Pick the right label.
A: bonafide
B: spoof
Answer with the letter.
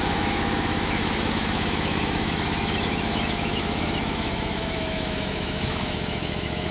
B